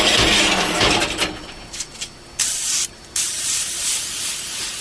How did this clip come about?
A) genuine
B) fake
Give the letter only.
A